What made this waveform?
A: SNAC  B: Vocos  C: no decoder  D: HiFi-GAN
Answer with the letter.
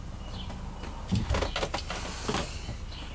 C